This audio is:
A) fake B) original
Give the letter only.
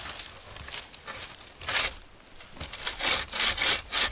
B